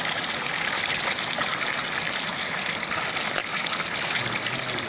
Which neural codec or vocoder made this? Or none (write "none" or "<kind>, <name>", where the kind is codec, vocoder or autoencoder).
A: none